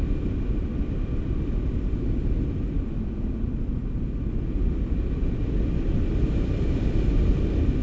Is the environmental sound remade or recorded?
recorded